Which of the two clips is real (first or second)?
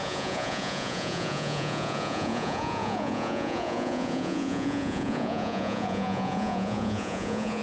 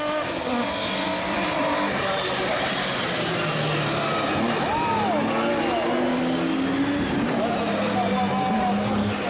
second